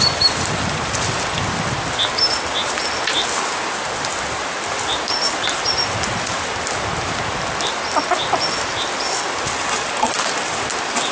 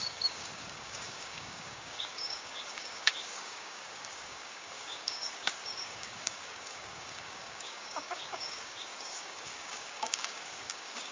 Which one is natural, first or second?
first